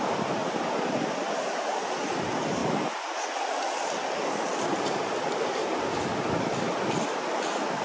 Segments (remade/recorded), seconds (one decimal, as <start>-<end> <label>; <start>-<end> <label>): 0.0-7.8 recorded